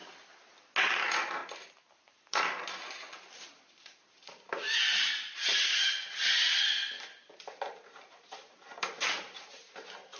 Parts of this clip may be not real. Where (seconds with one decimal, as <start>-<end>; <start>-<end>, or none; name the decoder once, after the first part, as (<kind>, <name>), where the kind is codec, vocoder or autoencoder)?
0.9-1.4 (vocoder, BigVGAN v2); 1.9-5.5; 7.3-10.2